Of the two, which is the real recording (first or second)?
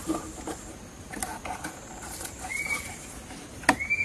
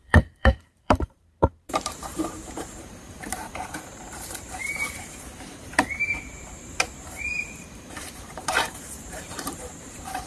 first